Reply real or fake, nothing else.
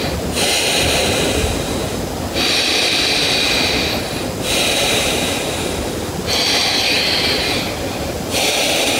real